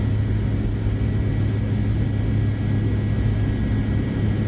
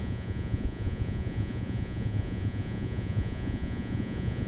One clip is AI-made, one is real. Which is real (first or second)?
first